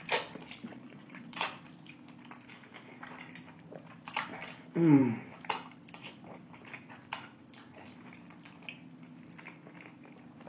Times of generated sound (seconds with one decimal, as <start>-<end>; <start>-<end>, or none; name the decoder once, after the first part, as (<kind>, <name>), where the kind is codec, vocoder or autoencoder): 0.7-1.6 (vocoder, Vocos)